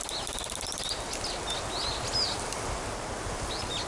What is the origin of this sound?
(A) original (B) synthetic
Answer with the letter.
A